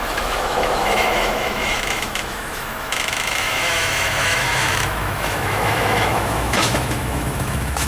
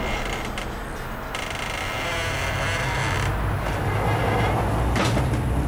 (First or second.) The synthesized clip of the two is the first